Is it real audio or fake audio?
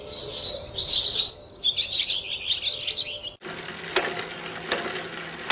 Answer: real